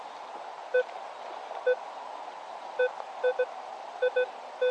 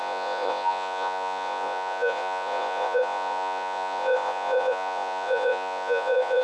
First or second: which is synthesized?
second